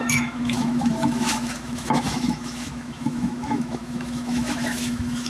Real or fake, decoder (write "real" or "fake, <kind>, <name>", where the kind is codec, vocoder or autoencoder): fake, autoencoder, DAC-VAE